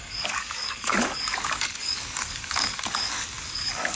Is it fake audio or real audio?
fake